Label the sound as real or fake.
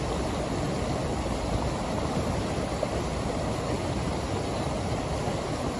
real